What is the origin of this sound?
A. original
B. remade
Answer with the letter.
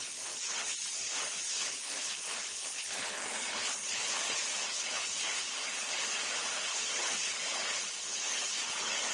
B